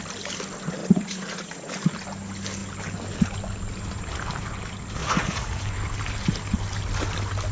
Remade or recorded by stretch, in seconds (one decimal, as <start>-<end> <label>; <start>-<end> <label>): 0.0-0.8 recorded; 0.8-1.7 remade; 1.7-5.0 recorded; 5.0-5.6 remade; 5.6-7.5 recorded